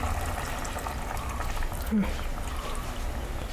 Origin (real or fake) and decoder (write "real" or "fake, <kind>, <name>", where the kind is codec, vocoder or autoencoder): real